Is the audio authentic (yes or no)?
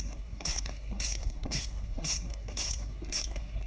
no